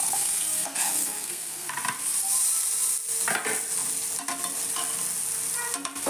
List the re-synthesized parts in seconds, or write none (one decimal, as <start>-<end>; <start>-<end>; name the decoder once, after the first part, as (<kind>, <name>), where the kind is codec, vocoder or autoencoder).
0.0-1.7 (codec, SNAC)